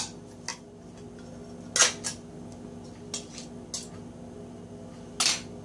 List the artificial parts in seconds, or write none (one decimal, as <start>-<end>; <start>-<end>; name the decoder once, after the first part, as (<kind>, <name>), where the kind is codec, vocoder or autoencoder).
none